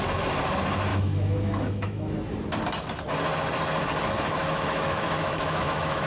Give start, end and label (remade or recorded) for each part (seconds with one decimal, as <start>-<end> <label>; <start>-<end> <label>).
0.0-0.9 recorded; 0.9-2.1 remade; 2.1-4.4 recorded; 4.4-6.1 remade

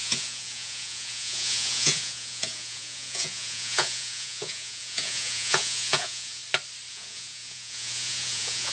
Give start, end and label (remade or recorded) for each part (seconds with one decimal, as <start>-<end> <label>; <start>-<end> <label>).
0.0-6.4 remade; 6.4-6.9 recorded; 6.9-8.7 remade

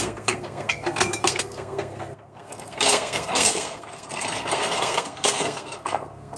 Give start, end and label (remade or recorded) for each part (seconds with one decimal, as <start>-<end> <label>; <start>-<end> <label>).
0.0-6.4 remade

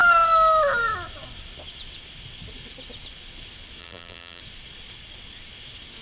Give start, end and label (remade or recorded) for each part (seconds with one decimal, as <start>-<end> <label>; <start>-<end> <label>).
0.0-3.8 recorded; 3.8-4.4 remade; 4.4-6.0 recorded